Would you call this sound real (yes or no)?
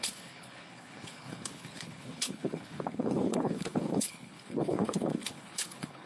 no